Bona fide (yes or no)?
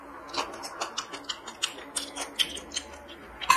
yes